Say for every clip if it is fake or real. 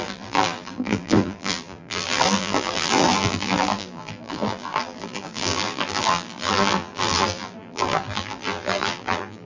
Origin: fake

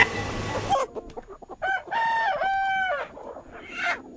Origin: real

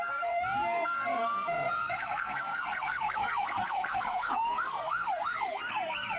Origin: fake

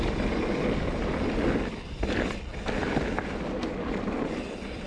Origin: real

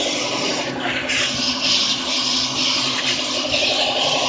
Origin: real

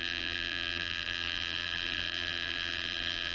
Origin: fake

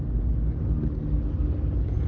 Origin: real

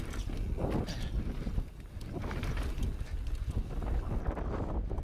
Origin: real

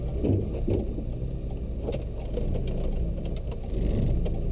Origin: real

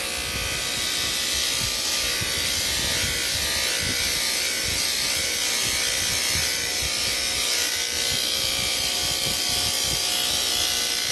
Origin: real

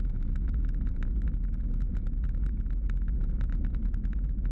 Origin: real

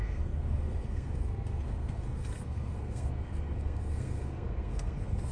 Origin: fake